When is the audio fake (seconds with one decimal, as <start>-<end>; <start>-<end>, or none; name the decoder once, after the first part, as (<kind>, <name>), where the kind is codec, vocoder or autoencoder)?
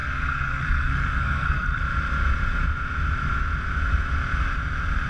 0.0-1.8 (codec, SNAC)